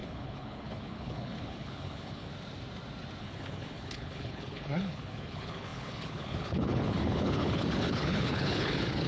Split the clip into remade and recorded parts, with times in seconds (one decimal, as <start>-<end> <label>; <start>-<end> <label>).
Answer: 0.0-2.3 remade; 2.3-3.2 recorded; 3.2-9.1 remade